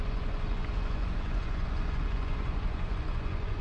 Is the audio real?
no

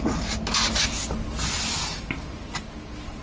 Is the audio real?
yes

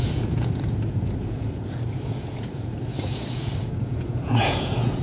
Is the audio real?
no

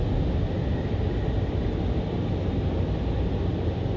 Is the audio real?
yes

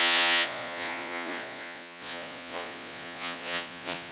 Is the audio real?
no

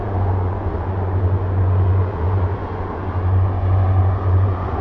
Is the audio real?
no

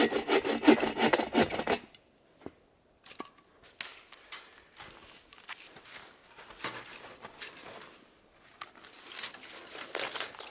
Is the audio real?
yes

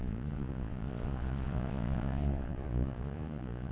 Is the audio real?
no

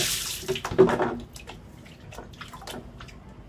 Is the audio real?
yes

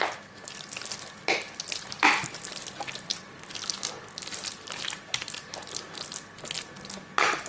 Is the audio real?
yes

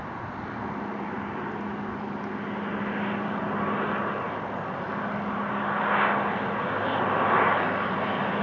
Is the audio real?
yes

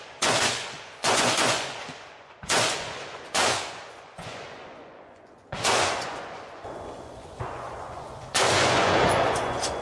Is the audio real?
no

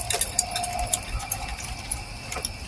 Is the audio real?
yes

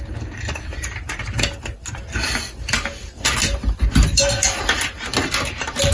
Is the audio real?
yes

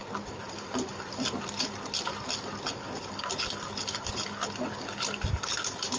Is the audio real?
yes